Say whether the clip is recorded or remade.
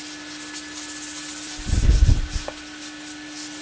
recorded